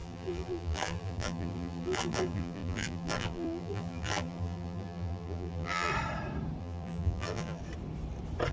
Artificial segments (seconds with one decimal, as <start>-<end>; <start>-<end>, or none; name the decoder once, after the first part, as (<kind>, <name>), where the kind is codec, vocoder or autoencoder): 0.0-5.9 (vocoder, BigVGAN v2); 6.6-7.6